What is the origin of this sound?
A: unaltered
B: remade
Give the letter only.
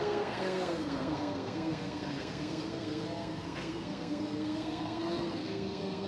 B